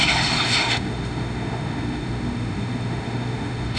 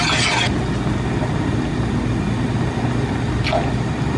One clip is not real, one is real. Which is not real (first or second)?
first